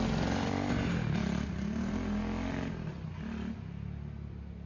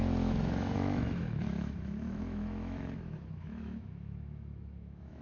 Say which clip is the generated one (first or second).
second